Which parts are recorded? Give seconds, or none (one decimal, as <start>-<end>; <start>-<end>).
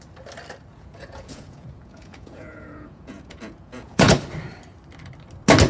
0.0-0.7; 4.1-5.7